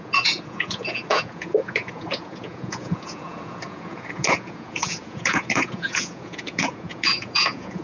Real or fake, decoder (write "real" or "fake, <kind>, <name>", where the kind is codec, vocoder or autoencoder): fake, vocoder, Vocos